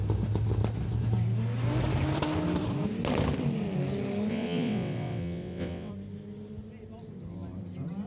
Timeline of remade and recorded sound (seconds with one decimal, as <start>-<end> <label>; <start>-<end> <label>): 0.0-4.3 recorded; 4.3-5.9 remade; 5.9-8.1 recorded